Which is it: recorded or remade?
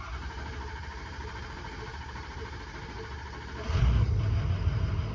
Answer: remade